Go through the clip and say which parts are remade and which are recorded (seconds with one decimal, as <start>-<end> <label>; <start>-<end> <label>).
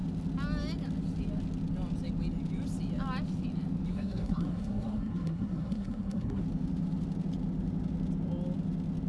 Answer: 0.0-3.9 recorded; 3.9-6.4 remade; 6.4-9.1 recorded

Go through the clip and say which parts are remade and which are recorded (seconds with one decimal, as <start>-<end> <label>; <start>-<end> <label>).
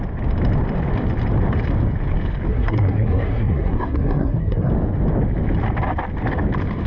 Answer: 0.0-2.5 recorded; 2.5-4.7 remade; 4.7-6.9 recorded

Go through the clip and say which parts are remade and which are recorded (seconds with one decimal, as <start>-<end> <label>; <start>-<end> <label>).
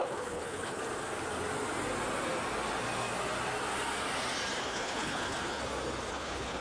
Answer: 0.0-0.8 remade; 0.8-4.6 recorded; 4.6-5.6 remade; 5.6-6.1 recorded; 6.1-6.6 remade